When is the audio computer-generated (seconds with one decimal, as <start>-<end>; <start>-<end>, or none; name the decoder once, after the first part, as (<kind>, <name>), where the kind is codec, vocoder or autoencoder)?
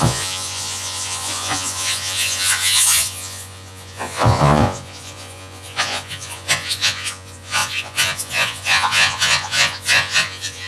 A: 0.0-10.7 (vocoder, Vocos)